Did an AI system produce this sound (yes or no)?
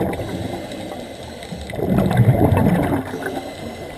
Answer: no